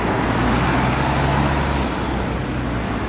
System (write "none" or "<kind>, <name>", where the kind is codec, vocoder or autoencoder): none